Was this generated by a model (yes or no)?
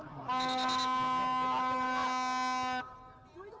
no